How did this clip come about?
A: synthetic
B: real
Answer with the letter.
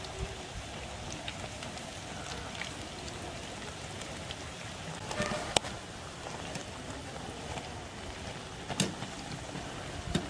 B